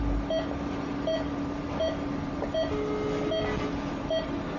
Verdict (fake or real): real